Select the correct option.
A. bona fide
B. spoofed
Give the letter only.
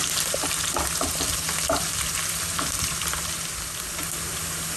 A